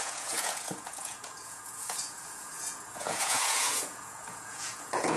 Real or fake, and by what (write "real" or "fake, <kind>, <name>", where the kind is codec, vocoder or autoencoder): fake, vocoder, Vocos